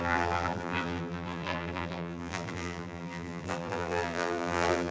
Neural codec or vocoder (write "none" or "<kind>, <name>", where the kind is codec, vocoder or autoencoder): vocoder, BigVGAN v2